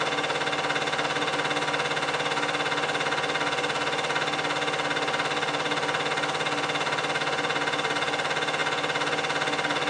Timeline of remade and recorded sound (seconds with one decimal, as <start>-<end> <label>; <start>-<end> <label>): 0.0-9.9 recorded